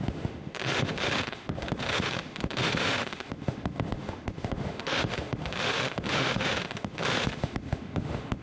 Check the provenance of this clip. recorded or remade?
remade